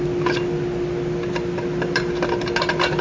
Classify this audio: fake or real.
real